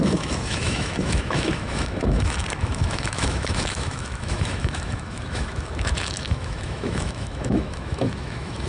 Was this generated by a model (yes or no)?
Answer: yes